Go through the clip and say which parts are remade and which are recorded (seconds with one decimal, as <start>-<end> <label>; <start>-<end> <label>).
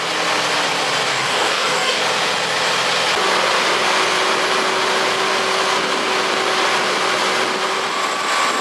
0.0-1.1 recorded; 1.1-2.0 remade; 2.0-8.6 recorded